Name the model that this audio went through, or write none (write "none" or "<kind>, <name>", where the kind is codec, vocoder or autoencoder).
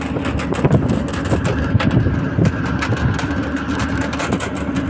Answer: none